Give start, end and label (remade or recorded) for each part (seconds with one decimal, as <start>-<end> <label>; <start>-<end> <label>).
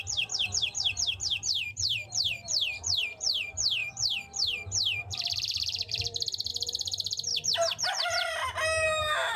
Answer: 0.0-7.3 remade; 7.3-7.9 recorded; 7.9-9.4 remade